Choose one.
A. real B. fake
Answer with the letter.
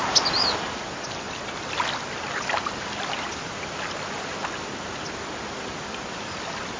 A